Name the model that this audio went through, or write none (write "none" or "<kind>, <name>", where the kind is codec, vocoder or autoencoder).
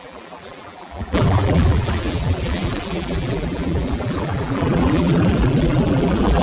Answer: vocoder, BigVGAN v2